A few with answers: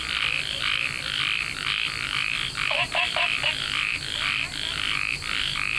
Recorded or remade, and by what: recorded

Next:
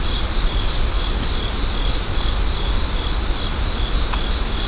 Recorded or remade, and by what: recorded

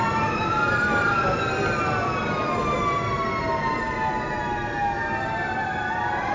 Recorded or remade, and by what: recorded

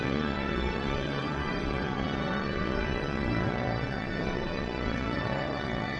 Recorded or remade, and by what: remade, vocoder, WaveNeXt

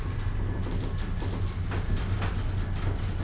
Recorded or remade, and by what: recorded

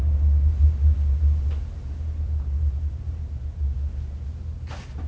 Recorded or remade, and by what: recorded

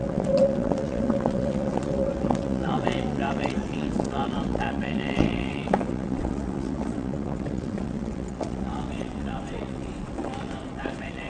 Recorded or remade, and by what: remade, vocoder, WaveNeXt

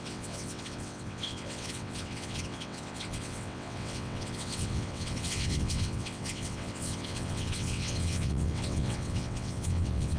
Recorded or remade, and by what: remade, vocoder, WaveNeXt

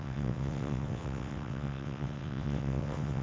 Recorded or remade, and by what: remade, vocoder, WaveNeXt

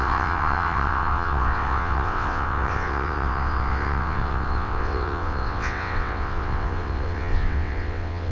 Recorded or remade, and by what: remade, vocoder, WaveNeXt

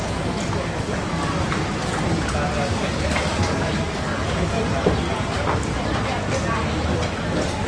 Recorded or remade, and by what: recorded